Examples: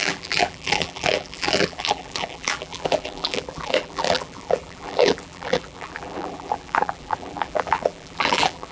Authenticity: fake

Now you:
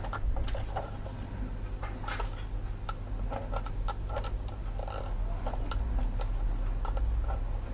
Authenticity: real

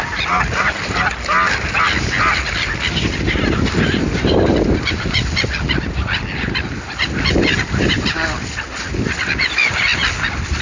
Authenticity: real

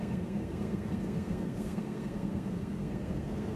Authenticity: fake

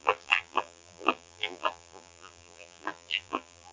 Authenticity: fake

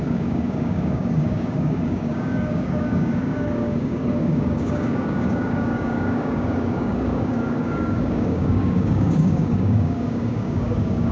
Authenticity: fake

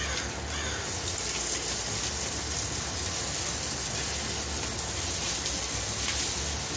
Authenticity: real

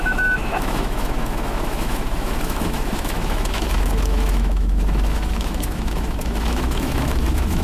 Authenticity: fake